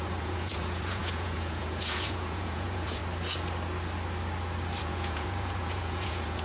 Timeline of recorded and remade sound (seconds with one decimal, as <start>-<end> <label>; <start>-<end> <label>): 0.0-3.0 remade; 3.0-4.8 recorded; 4.8-6.4 remade